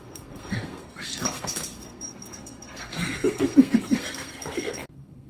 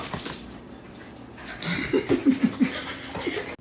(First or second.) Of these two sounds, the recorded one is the second